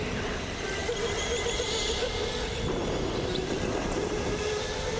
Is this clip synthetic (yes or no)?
no